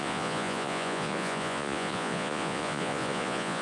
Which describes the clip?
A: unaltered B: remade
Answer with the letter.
B